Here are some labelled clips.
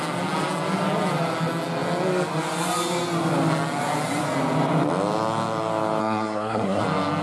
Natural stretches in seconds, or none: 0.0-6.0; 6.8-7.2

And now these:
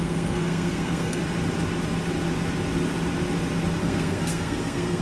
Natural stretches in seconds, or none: 1.2-3.8

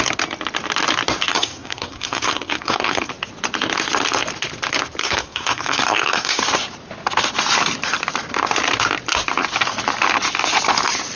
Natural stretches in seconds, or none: 0.0-1.3; 3.1-5.0; 6.4-11.2

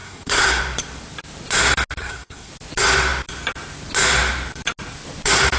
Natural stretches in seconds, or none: 0.6-2.0; 2.5-5.6

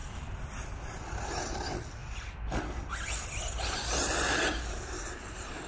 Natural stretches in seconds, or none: 0.0-5.7

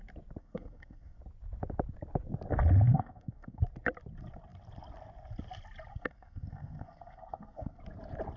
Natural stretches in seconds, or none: 0.0-0.4; 1.2-2.9; 3.6-5.9; 7.8-8.4

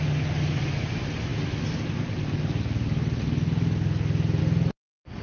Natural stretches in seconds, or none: 0.0-5.2

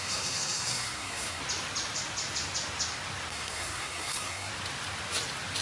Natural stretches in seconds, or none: 1.4-3.3; 4.5-5.6